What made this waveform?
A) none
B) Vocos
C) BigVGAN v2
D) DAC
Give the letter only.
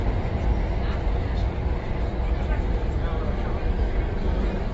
A